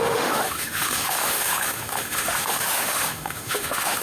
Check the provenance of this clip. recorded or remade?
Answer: remade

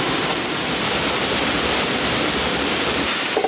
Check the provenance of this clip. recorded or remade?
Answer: remade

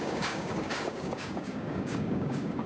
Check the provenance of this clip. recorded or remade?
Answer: remade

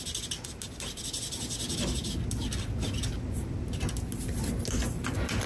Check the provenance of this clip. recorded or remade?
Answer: recorded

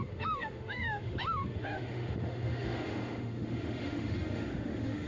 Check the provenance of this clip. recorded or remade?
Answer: remade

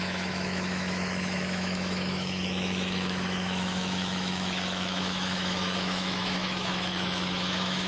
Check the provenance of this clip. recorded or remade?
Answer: remade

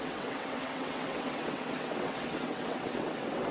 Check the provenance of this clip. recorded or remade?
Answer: remade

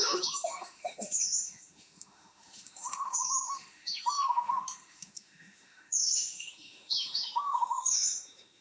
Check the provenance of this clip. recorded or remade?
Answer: remade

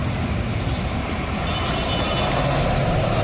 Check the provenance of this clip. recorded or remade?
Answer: recorded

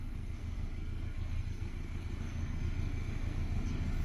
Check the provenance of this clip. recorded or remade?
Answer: remade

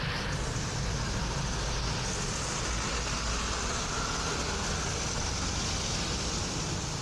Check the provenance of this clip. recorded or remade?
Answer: recorded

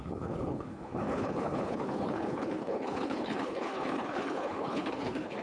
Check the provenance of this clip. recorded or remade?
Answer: remade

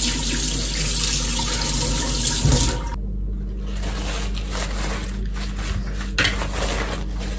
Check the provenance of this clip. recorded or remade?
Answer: recorded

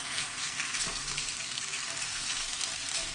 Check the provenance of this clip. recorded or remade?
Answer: remade